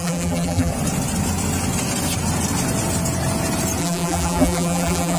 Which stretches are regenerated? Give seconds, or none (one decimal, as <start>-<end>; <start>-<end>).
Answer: 0.0-0.7; 3.8-5.2